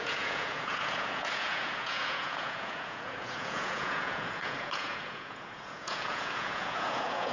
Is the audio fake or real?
fake